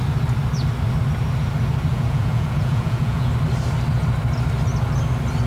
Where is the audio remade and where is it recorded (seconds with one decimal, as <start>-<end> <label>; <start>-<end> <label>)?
0.0-1.9 recorded; 1.9-3.3 remade; 3.3-5.5 recorded